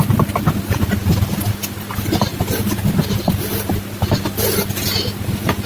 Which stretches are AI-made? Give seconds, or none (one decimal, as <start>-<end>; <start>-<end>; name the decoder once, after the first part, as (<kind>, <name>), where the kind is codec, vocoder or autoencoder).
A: none